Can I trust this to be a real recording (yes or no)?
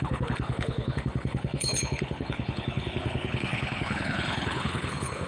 no